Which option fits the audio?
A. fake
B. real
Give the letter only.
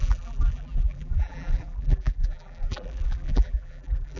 A